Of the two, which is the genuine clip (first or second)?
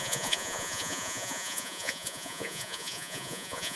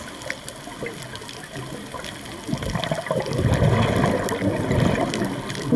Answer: second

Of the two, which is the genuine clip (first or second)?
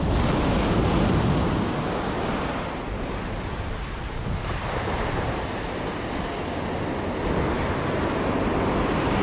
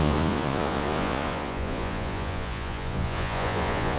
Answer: first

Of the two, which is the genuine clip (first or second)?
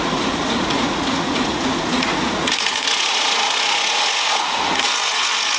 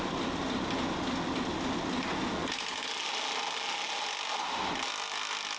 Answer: second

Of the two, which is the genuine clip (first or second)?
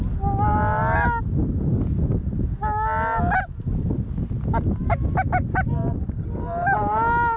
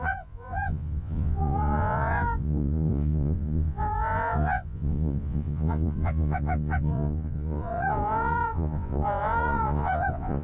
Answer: first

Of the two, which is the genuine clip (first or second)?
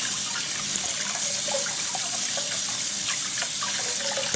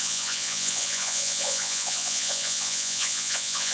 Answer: first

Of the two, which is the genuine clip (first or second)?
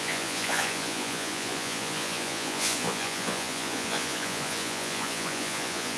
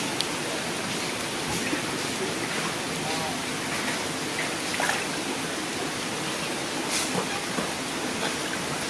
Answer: second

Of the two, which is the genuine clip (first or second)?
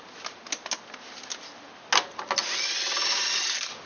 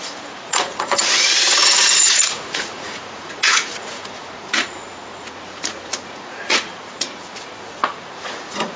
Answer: first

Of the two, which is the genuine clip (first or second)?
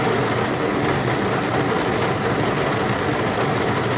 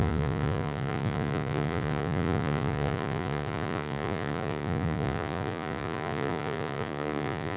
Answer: first